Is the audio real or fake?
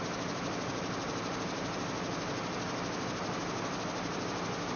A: real